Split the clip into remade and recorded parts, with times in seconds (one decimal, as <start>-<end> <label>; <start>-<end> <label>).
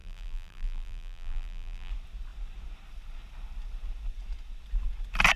0.0-1.9 remade; 1.9-5.4 recorded